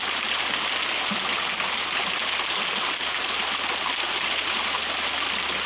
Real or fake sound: real